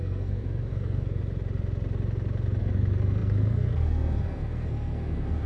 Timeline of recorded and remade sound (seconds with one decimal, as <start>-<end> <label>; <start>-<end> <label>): 0.0-1.2 remade; 1.2-2.6 recorded; 2.6-5.5 remade